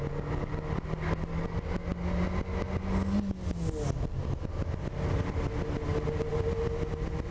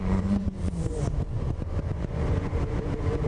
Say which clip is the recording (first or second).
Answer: first